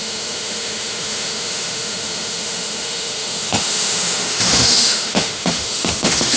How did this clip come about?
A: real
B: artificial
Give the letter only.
B